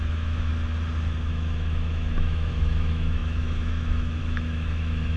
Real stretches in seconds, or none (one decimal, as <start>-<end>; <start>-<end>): 0.5-1.3

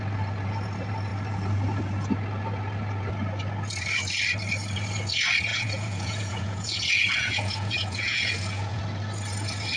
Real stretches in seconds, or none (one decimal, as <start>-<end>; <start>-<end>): 0.0-5.5; 8.8-9.8

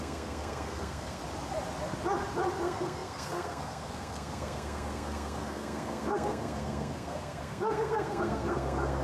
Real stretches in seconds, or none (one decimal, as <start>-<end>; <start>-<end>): 1.2-2.6

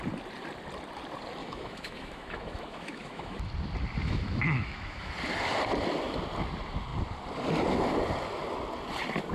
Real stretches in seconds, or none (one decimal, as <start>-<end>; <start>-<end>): 0.0-1.4; 3.4-4.0; 5.1-9.3

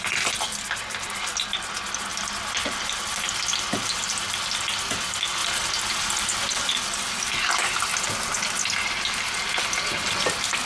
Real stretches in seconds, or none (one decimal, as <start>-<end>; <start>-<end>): 0.0-10.7

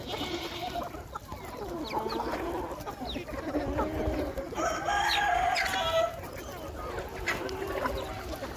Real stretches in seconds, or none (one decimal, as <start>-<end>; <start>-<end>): 0.0-8.6